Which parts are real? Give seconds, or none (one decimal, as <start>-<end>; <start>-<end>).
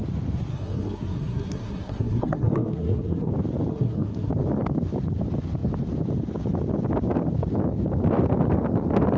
0.0-0.5; 3.3-3.7; 4.3-9.2